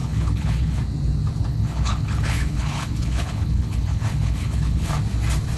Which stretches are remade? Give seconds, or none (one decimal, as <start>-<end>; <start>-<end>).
0.0-0.8; 1.5-4.9